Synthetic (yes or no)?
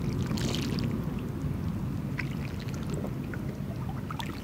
no